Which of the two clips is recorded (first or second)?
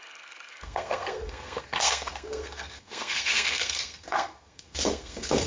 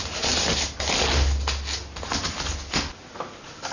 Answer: second